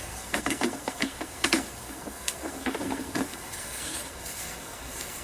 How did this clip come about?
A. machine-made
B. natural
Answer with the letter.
A